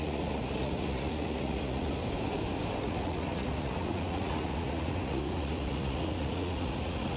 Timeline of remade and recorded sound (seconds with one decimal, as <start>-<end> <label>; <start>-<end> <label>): 0.0-2.0 remade; 2.0-2.8 recorded; 2.8-7.2 remade